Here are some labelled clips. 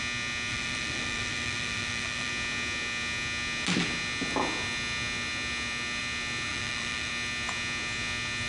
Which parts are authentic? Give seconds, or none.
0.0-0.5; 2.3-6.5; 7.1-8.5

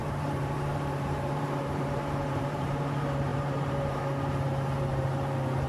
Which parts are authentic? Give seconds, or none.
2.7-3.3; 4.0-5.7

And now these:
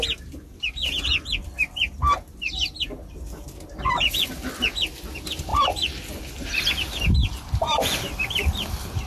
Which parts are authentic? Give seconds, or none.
0.0-5.5; 6.7-7.2; 8.3-9.1